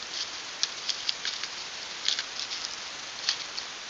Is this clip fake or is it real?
real